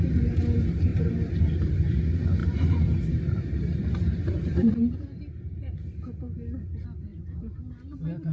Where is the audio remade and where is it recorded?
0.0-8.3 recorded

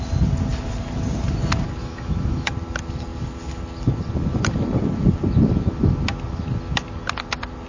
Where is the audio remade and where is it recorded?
0.0-1.8 recorded; 1.8-2.5 remade; 2.5-7.7 recorded

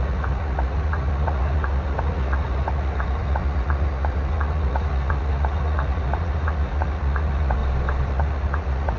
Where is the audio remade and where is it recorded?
0.0-7.6 remade; 7.6-8.1 recorded; 8.1-9.0 remade

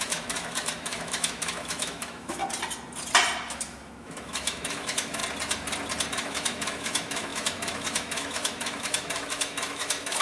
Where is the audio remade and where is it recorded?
0.0-2.4 remade; 2.4-3.5 recorded; 3.5-5.2 remade; 5.2-6.1 recorded; 6.1-10.2 remade

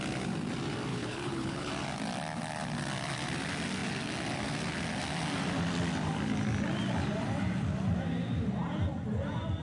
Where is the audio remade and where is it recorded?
0.0-0.9 recorded; 0.9-1.7 remade; 1.7-9.6 recorded

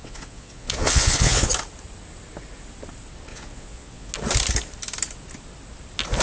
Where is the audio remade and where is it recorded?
0.0-1.5 remade; 1.5-3.3 recorded; 3.3-4.1 remade; 4.1-6.2 recorded

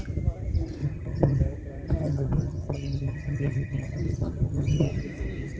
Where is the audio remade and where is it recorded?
0.0-0.8 recorded; 0.8-1.4 remade; 1.4-2.0 recorded; 2.0-5.0 remade; 5.0-5.6 recorded